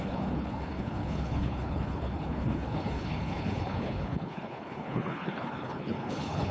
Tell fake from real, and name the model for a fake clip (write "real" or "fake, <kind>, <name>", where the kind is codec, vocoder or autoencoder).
fake, codec, HILCodec